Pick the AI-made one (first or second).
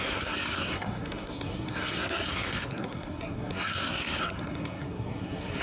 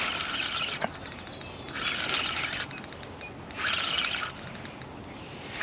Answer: first